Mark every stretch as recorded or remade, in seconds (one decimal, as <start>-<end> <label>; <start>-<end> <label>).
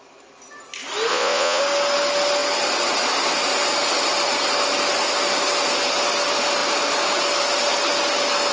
0.0-1.1 recorded; 1.1-1.6 remade; 1.6-8.5 recorded